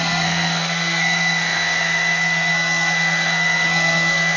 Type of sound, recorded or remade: remade